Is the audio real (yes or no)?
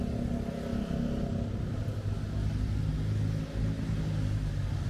yes